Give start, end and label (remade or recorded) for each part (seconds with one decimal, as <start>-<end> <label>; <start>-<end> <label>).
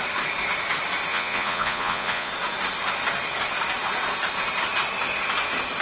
0.0-1.1 recorded; 1.1-2.3 remade; 2.3-5.8 recorded